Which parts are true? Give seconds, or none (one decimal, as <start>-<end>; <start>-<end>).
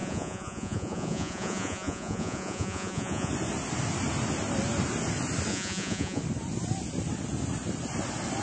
3.3-5.5; 6.2-8.4